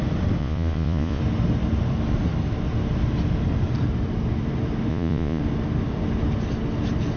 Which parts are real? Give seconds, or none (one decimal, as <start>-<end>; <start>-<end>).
0.0-0.4; 1.2-4.9; 5.4-7.2

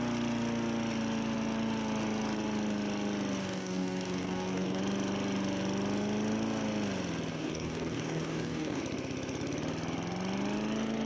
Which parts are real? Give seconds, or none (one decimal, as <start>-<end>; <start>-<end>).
0.0-3.4; 4.8-7.3; 8.8-11.1

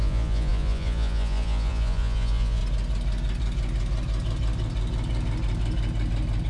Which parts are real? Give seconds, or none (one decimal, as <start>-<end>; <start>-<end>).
2.6-6.5

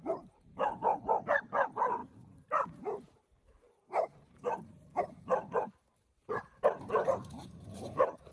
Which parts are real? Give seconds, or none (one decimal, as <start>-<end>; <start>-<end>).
none

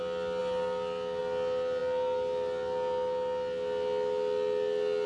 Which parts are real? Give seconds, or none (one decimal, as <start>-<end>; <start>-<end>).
0.0-5.1